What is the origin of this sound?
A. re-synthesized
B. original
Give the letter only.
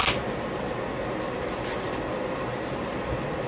B